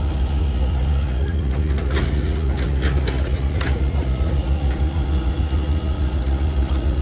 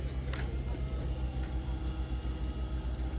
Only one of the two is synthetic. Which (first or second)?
first